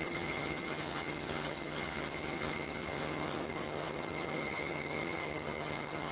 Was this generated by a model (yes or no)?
yes